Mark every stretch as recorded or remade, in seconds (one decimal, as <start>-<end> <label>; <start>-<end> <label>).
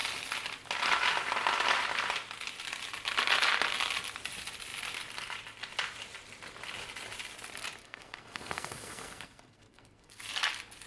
0.0-7.8 recorded; 7.8-10.2 remade; 10.2-10.9 recorded